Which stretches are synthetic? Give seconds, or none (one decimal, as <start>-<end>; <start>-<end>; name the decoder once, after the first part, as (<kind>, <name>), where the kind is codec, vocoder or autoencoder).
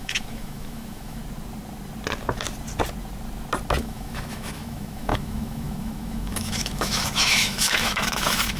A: 0.0-1.2 (autoencoder, DAC-VAE); 3.8-8.6